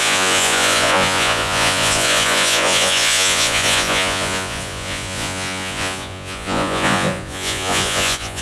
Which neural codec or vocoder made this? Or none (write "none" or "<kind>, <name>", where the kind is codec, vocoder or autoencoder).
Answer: vocoder, Vocos